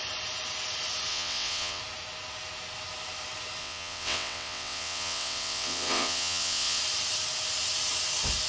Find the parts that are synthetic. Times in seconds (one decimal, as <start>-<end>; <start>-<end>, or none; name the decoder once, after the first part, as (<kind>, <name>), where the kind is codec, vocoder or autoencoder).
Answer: 1.1-1.8 (vocoder, WaveNeXt); 3.6-6.8